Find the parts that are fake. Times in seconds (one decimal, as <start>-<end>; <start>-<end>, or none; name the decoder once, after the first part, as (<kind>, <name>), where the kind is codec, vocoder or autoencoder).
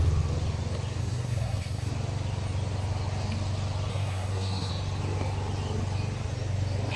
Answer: 1.0-1.9 (codec, SNAC); 3.9-4.7